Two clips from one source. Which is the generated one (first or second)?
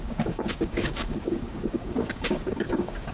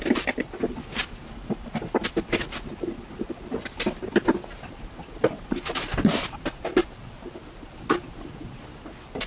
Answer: first